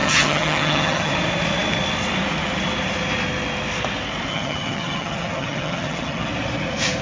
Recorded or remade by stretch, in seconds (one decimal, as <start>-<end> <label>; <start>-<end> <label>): 0.0-1.1 remade; 1.1-4.3 recorded; 4.3-6.3 remade; 6.3-7.0 recorded